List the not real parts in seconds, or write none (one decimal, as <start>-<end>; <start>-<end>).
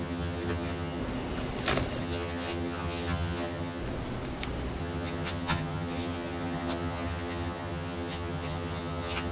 0.0-1.0; 2.0-3.8; 4.8-9.3